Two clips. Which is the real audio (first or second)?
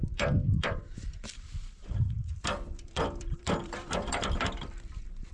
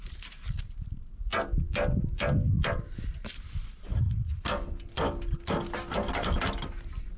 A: second